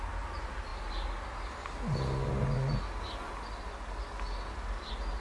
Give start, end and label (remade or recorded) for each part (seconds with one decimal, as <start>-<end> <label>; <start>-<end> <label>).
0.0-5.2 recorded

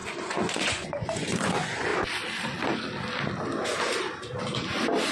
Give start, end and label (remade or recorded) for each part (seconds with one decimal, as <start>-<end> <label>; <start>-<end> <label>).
0.0-1.9 remade; 1.9-5.1 recorded

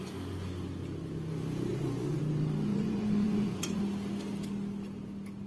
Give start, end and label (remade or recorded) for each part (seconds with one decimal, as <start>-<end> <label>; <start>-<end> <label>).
0.0-1.7 recorded; 1.7-2.2 remade; 2.2-2.7 recorded; 2.7-3.8 remade; 3.8-5.5 recorded

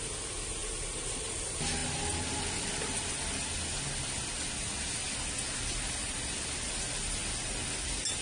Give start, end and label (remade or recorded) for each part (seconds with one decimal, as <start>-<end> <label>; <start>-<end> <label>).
0.0-8.2 recorded

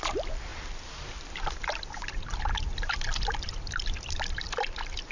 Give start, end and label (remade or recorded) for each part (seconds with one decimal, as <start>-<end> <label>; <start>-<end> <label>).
0.0-5.1 recorded

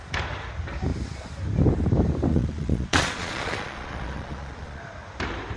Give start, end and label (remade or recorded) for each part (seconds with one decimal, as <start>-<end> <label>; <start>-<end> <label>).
0.0-2.3 recorded; 2.3-4.8 remade; 4.8-5.6 recorded

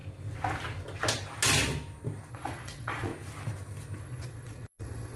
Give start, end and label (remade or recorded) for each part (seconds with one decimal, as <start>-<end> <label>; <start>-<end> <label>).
0.0-2.3 recorded; 2.3-3.1 remade; 3.1-4.0 recorded; 4.0-5.2 remade

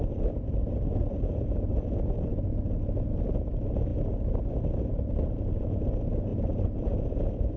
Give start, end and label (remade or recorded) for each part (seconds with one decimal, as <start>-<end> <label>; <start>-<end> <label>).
0.0-6.3 recorded; 6.3-7.6 remade